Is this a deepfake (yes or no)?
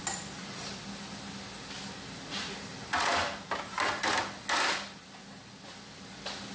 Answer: no